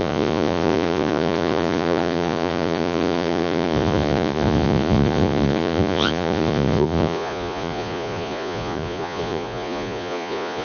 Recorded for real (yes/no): no